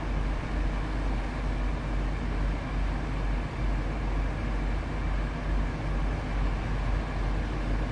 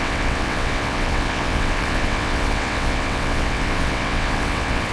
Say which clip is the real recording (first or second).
first